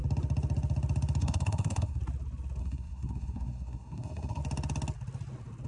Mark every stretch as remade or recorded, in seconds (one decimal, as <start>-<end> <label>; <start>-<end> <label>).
0.0-1.2 recorded; 1.2-2.0 remade; 2.0-2.6 recorded; 2.6-4.4 remade; 4.4-5.7 recorded